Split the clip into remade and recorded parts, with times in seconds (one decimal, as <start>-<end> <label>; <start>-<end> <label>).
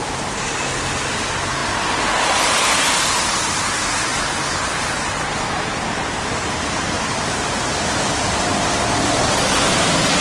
0.0-8.5 remade; 8.5-9.5 recorded; 9.5-10.2 remade